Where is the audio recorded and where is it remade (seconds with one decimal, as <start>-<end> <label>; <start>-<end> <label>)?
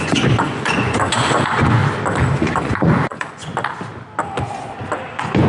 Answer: 0.0-1.8 remade; 1.8-2.4 recorded; 2.4-3.5 remade; 3.5-5.1 recorded; 5.1-5.5 remade